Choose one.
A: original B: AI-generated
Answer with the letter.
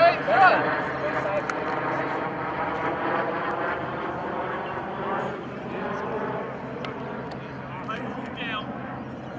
A